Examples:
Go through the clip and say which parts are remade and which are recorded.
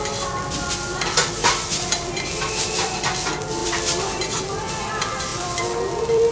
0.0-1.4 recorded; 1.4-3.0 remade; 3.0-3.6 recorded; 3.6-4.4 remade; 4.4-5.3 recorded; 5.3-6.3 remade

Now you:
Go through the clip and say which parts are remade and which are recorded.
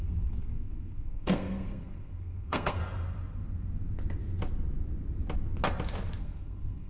0.0-2.8 remade; 2.8-6.2 recorded; 6.2-6.9 remade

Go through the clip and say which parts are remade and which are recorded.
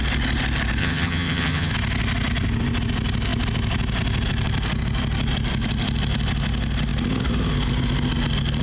0.0-0.8 recorded; 0.8-1.7 remade; 1.7-8.6 recorded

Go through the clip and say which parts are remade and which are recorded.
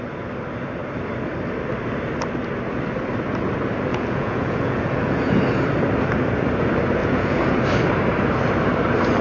0.0-3.9 recorded; 3.9-5.4 remade; 5.4-7.0 recorded; 7.0-7.6 remade; 7.6-9.2 recorded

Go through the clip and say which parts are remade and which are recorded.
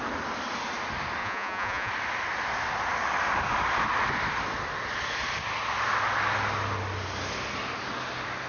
0.0-1.2 recorded; 1.2-1.9 remade; 1.9-8.5 recorded